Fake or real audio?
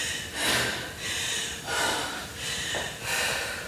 fake